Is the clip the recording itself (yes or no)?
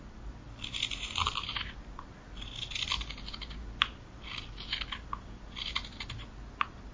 yes